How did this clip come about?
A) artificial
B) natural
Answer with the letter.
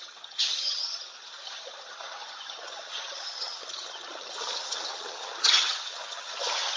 A